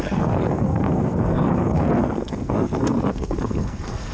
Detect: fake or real fake